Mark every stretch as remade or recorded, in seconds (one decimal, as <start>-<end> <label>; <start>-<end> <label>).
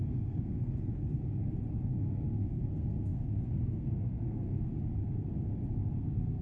0.0-1.0 remade; 1.0-1.8 recorded; 1.8-4.7 remade; 4.7-6.0 recorded; 6.0-6.4 remade